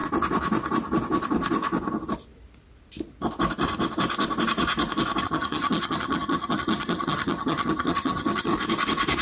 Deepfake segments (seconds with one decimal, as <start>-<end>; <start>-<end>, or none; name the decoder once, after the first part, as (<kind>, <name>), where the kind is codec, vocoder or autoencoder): 5.2-8.5 (vocoder, HiFi-GAN)